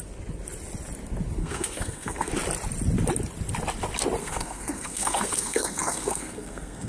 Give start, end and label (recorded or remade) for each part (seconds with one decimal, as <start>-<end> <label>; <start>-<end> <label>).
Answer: 0.0-1.4 recorded; 1.4-2.3 remade; 2.3-4.2 recorded; 4.2-6.9 remade